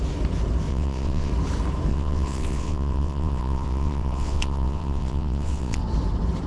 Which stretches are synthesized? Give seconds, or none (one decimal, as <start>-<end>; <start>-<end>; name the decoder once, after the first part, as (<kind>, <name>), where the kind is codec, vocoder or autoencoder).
0.7-1.3 (vocoder, WaveNeXt); 1.9-5.8